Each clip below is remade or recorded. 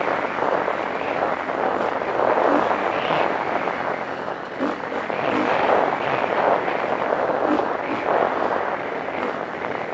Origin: recorded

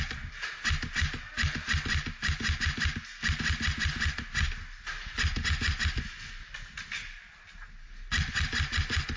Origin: recorded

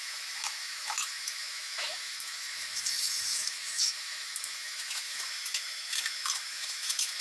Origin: remade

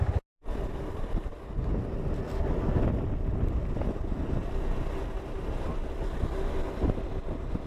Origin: recorded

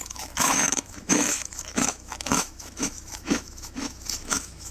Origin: remade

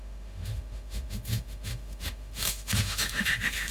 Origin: remade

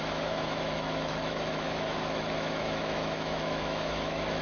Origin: remade